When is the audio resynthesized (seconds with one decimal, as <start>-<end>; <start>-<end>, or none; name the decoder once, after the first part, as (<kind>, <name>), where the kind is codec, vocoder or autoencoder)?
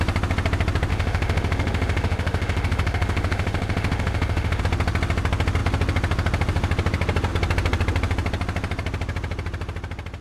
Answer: 0.9-4.6 (autoencoder, DAC-VAE)